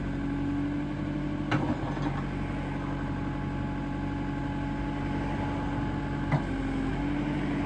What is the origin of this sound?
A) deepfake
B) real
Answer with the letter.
B